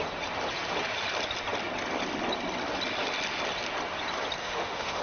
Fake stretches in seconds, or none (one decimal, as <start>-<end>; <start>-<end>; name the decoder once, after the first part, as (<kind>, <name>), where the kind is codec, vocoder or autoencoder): 4.4-5.0 (autoencoder, DAC-VAE)